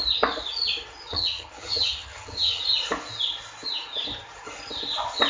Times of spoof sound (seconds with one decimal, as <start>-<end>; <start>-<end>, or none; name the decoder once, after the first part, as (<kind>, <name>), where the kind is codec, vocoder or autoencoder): 1.1-2.6 (vocoder, HiFi-GAN)